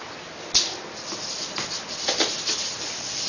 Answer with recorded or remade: recorded